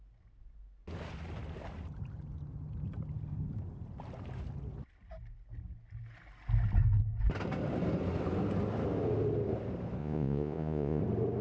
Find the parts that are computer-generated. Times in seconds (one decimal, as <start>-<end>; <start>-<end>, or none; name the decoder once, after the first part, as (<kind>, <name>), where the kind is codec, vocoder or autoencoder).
10.0-11.0 (vocoder, Vocos)